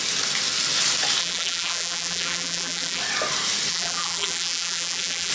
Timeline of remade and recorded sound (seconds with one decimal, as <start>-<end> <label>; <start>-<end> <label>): 0.0-1.2 recorded; 1.2-3.0 remade; 3.0-3.7 recorded; 3.7-5.3 remade